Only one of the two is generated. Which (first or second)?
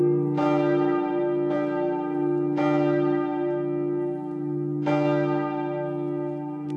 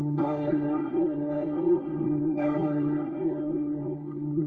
second